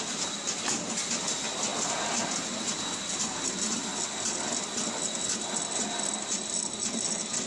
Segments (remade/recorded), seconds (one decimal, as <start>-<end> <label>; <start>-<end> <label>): 0.0-7.5 recorded